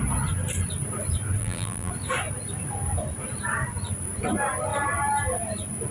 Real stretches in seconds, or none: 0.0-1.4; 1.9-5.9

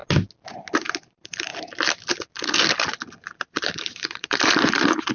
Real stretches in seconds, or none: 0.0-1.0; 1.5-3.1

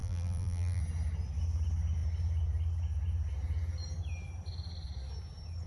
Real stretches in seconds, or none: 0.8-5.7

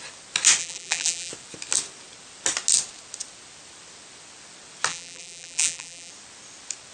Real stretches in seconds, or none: 0.0-0.6; 1.3-4.9; 6.1-6.9

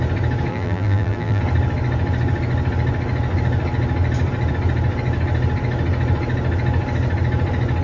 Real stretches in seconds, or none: 0.0-0.5; 1.4-7.8

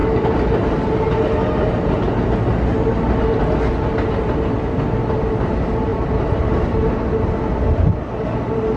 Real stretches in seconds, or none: 0.0-8.8

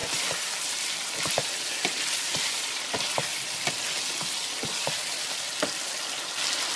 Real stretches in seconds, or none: 0.0-6.8